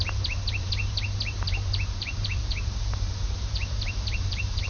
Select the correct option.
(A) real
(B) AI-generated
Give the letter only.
B